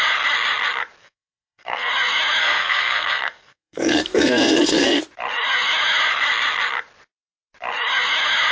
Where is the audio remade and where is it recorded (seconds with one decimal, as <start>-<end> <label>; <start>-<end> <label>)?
0.0-1.0 recorded; 1.0-1.9 remade; 1.9-2.4 recorded; 2.4-5.0 remade; 5.0-8.5 recorded